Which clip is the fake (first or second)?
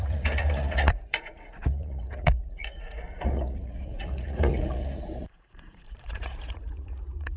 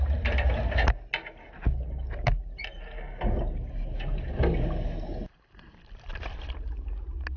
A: first